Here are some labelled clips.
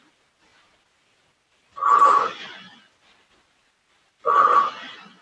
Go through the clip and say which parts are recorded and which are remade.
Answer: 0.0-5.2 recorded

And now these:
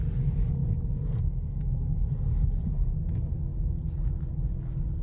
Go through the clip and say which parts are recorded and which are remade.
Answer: 0.0-0.6 recorded; 0.6-1.2 remade; 1.2-5.0 recorded

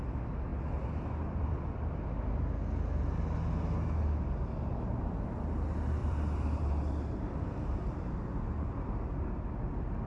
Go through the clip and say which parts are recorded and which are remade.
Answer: 0.0-6.0 recorded; 6.0-7.2 remade; 7.2-10.1 recorded